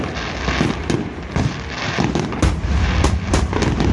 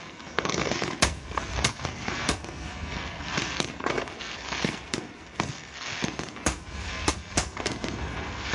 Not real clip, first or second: second